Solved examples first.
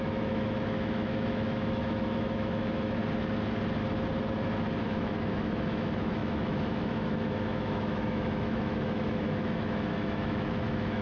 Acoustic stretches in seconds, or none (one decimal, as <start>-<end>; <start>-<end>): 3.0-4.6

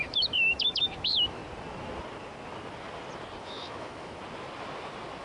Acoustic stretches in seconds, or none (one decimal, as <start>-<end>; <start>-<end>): 1.4-3.4; 4.2-5.2

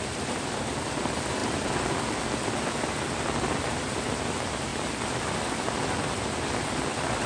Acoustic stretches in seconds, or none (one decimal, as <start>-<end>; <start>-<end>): 0.0-7.3